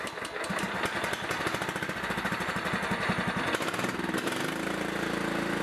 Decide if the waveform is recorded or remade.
recorded